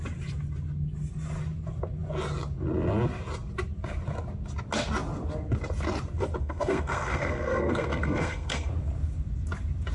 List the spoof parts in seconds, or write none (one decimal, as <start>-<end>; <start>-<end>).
6.4-8.7